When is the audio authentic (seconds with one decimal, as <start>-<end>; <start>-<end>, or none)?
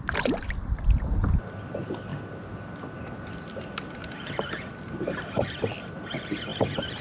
0.0-4.0; 5.8-6.5